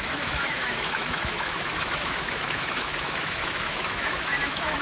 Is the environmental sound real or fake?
fake